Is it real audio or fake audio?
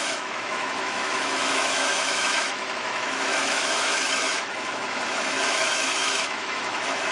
fake